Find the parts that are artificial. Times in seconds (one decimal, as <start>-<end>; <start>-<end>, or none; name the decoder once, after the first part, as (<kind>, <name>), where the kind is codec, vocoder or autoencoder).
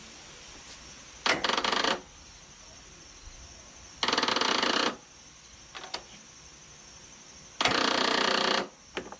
none